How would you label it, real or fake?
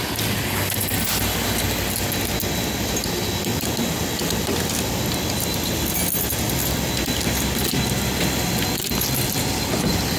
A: real